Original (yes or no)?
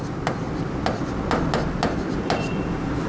yes